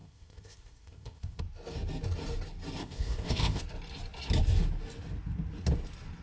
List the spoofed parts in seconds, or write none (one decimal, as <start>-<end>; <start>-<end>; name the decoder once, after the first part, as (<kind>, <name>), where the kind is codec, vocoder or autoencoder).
0.0-1.4 (codec, ZipCodec); 2.8-3.6